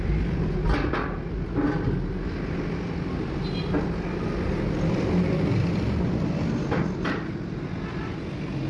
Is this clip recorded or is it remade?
recorded